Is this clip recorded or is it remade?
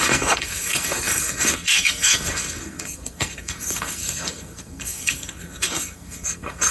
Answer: remade